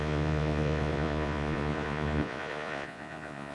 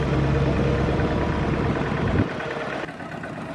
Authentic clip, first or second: second